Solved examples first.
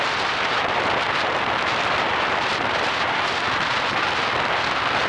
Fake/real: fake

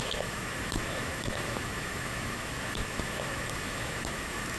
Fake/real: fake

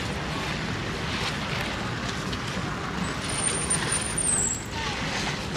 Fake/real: real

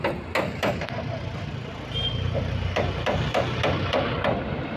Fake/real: real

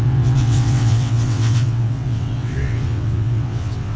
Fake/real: fake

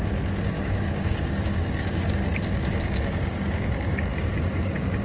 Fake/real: fake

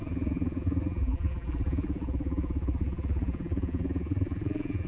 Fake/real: fake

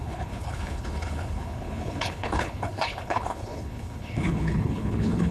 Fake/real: fake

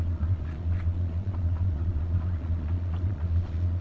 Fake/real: fake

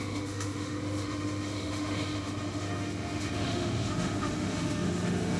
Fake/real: fake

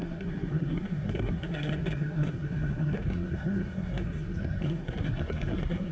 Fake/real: fake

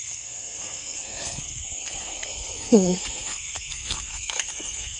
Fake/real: fake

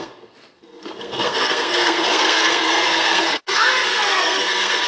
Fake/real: fake